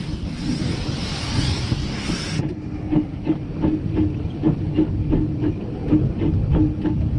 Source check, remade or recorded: recorded